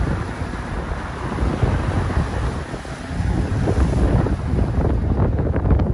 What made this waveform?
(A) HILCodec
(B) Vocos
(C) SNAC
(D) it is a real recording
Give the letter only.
D